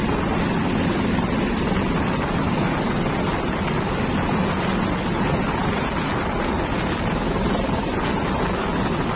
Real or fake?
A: real